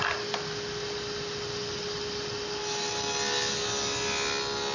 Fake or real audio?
real